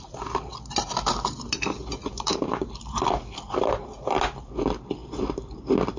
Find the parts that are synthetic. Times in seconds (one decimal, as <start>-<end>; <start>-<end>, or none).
2.0-2.7